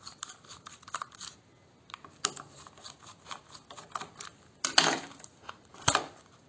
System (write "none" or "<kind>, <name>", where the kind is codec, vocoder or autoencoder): none